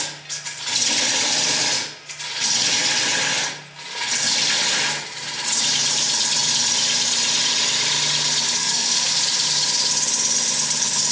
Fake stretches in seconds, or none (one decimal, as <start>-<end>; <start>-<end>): 8.6-9.1